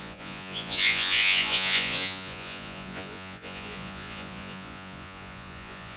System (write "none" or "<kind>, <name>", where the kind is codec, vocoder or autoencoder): vocoder, Vocos